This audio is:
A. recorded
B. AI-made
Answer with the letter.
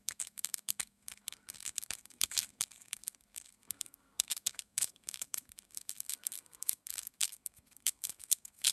B